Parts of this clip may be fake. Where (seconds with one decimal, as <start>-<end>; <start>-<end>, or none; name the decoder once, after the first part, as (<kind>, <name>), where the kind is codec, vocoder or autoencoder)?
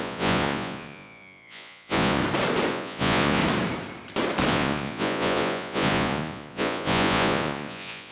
0.0-2.2 (vocoder, Vocos); 2.7-3.4; 4.5-8.1